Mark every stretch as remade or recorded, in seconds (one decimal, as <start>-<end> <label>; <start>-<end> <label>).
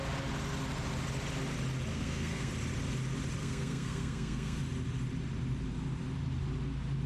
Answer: 0.0-1.9 recorded; 1.9-2.5 remade; 2.5-3.4 recorded; 3.4-4.6 remade; 4.6-7.1 recorded